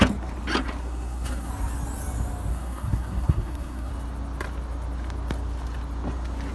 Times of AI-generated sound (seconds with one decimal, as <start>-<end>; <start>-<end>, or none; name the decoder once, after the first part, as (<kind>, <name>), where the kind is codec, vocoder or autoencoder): 0.8-1.5 (codec, SNAC); 2.5-3.9